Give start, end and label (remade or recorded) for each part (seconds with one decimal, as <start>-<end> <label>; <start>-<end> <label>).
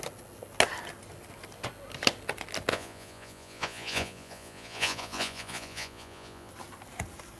0.0-2.7 recorded; 2.7-6.5 remade; 6.5-7.4 recorded